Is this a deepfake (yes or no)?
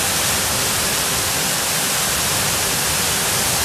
no